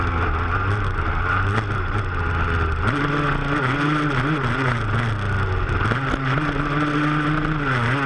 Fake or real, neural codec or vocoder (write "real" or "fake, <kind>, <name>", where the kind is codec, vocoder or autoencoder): real